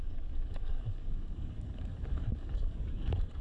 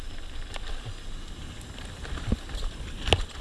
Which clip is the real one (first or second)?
second